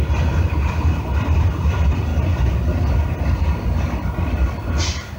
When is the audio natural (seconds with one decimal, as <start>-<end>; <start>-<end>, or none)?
0.0-5.2

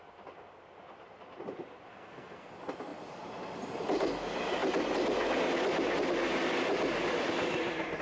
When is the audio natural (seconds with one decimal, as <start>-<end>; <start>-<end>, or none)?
0.0-1.9; 2.5-8.0